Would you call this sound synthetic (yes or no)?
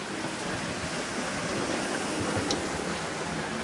no